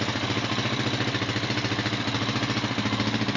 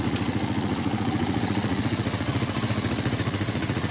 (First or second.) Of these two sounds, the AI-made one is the second